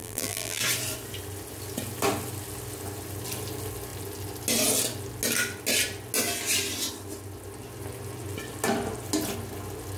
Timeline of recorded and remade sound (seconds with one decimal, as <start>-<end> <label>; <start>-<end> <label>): 0.0-0.6 remade; 0.6-10.0 recorded